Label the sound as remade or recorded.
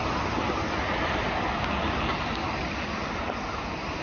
recorded